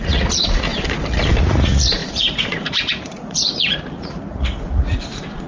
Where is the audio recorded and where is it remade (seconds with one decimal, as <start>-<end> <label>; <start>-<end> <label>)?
0.0-0.7 remade; 0.7-1.4 recorded; 1.4-5.5 remade

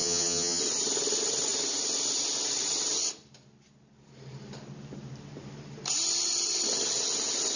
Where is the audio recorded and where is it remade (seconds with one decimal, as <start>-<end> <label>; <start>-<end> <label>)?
0.0-0.6 remade; 0.6-7.6 recorded

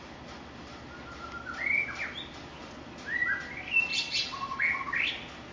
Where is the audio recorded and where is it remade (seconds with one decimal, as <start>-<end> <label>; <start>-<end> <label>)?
0.0-3.9 recorded; 3.9-4.8 remade; 4.8-5.5 recorded

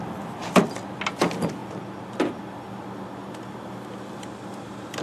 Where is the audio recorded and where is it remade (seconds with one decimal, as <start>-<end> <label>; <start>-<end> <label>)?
0.0-0.4 recorded; 0.4-1.0 remade; 1.0-5.0 recorded